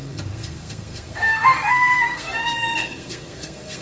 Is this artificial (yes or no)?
yes